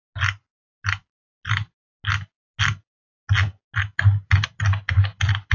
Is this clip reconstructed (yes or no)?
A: no